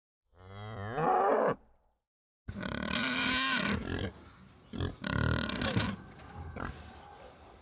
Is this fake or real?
real